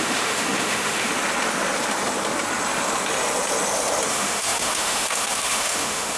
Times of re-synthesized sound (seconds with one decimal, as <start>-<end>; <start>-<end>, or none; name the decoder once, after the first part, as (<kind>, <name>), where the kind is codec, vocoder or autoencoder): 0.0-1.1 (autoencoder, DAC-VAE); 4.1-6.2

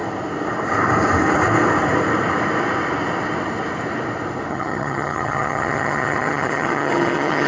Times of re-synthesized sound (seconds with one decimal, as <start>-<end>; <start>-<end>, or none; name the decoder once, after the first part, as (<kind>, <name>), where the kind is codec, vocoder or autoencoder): 4.5-7.5 (vocoder, HiFi-GAN)

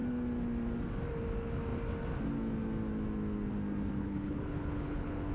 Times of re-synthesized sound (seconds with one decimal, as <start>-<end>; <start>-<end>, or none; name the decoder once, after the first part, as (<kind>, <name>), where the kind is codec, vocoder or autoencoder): 4.0-5.3 (codec, HILCodec)

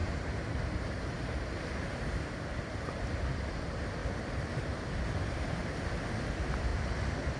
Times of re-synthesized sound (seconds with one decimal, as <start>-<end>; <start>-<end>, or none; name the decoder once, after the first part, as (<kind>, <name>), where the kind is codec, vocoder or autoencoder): 0.0-4.0 (vocoder, BigVGAN v2); 4.5-5.6; 6.3-6.7